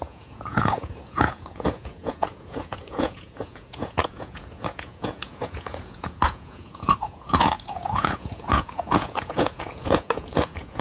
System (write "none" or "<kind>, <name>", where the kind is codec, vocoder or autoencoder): vocoder, Vocos